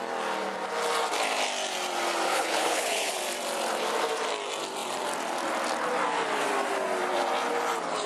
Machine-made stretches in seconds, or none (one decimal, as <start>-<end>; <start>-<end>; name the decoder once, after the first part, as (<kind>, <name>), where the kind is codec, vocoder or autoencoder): 2.3-3.2 (codec, HILCodec)